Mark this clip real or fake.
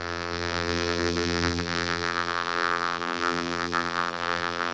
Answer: fake